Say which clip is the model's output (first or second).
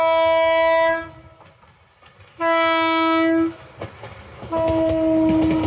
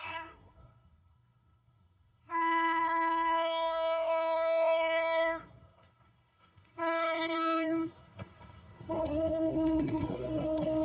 second